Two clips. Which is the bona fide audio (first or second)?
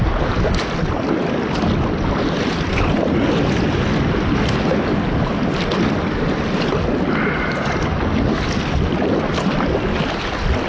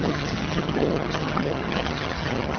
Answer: first